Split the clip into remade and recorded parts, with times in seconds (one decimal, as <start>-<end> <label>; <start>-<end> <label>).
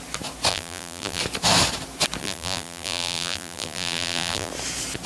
0.0-0.5 recorded; 0.5-1.2 remade; 1.2-2.2 recorded; 2.2-4.5 remade; 4.5-5.1 recorded